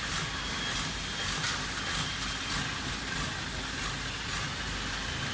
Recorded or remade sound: recorded